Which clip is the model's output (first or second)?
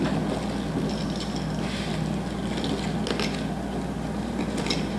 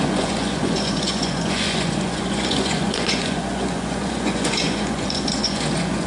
second